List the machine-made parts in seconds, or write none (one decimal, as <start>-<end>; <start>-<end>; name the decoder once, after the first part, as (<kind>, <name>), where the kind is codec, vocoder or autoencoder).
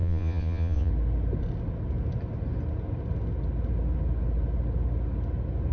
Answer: 0.0-0.9 (vocoder, Vocos)